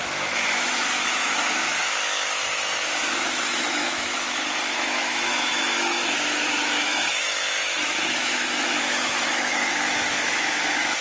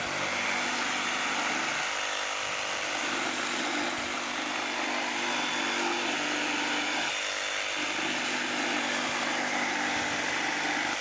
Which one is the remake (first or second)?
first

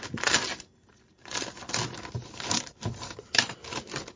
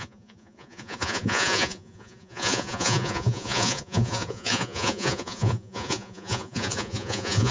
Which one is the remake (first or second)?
second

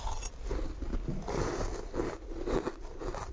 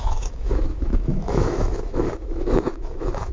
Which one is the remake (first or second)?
second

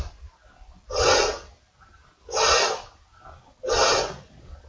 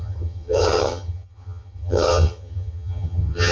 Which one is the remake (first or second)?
second